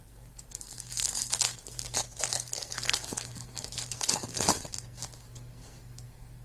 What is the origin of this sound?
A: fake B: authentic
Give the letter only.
A